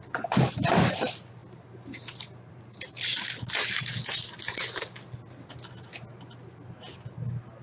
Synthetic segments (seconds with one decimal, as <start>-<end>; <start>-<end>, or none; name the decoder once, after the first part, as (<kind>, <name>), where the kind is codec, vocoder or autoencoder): none